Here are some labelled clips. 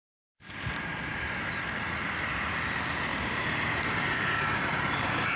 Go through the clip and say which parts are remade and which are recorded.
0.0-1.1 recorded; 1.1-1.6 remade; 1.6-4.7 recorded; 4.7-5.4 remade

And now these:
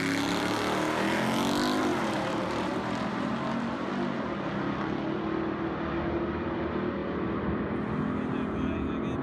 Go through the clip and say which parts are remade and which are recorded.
0.0-1.9 recorded; 1.9-3.9 remade; 3.9-9.2 recorded

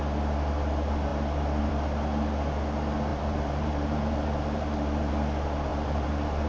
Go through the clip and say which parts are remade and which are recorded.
0.0-3.1 recorded; 3.1-5.1 remade; 5.1-5.7 recorded; 5.7-6.5 remade

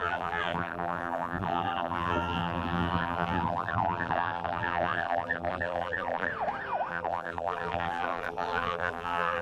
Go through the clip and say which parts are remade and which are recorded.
0.0-6.3 remade; 6.3-6.9 recorded; 6.9-9.4 remade

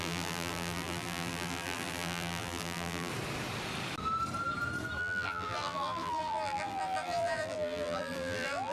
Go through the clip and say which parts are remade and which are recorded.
0.0-3.1 remade; 3.1-5.0 recorded; 5.0-8.7 remade

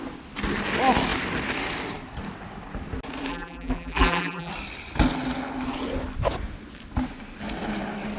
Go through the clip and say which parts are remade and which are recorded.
0.0-3.3 recorded; 3.3-4.5 remade; 4.5-8.2 recorded

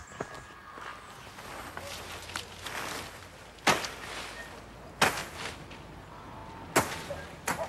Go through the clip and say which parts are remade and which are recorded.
0.0-7.7 recorded